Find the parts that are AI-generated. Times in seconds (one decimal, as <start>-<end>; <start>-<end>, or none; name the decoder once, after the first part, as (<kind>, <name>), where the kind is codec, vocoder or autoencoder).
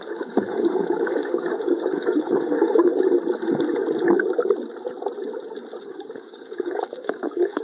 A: 0.0-2.9 (codec, DAC); 5.8-7.6